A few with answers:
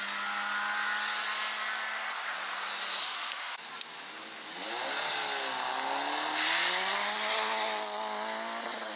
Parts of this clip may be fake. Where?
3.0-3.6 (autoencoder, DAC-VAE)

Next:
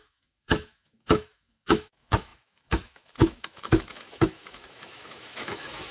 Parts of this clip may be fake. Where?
0.0-5.9 (autoencoder, DAC-VAE)

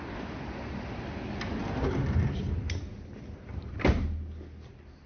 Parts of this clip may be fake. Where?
none

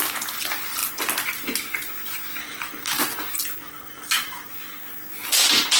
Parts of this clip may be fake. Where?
2.4-3.0 (autoencoder, DAC-VAE); 3.6-4.5

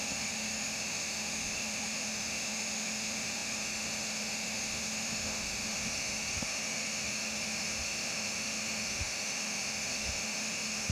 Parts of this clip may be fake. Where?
0.0-10.9 (autoencoder, DAC-VAE)